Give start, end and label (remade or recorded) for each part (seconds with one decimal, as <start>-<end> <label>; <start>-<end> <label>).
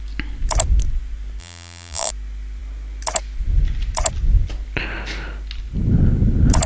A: 0.0-1.4 recorded; 1.4-2.1 remade; 2.1-6.7 recorded